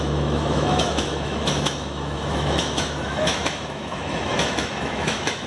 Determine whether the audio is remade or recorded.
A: remade